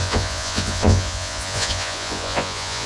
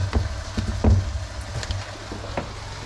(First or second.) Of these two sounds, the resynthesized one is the first